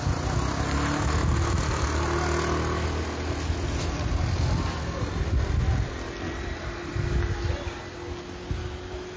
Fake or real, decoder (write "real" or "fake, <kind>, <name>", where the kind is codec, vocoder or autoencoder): real